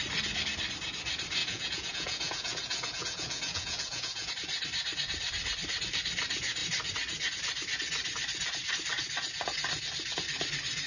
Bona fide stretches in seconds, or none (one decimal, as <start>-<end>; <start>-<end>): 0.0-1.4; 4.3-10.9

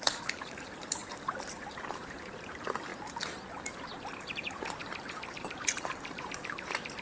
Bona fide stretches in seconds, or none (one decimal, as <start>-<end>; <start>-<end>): 2.9-4.2; 4.8-5.3

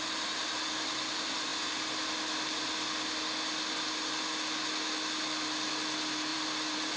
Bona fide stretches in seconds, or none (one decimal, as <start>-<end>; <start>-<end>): 0.0-6.3